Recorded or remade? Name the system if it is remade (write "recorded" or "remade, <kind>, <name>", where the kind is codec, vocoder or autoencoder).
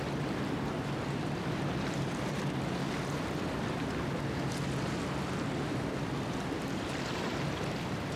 recorded